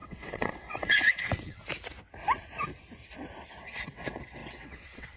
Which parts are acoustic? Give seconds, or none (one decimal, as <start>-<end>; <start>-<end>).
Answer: 1.6-3.6